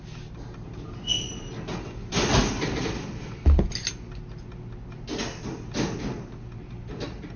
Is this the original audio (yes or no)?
yes